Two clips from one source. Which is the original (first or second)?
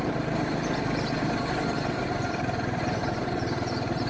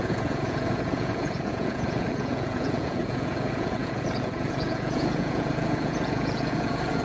first